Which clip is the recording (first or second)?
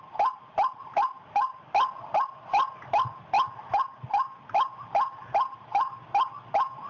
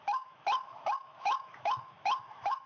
first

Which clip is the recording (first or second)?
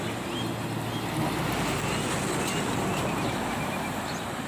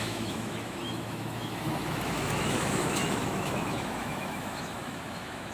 first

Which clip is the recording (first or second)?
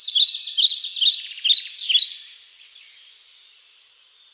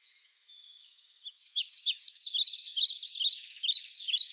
first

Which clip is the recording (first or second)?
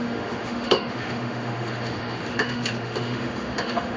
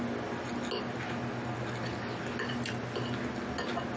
second